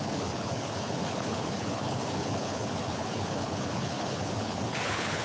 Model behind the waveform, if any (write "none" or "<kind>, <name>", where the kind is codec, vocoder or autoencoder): codec, HILCodec